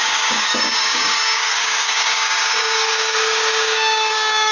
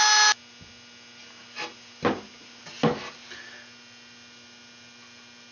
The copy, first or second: first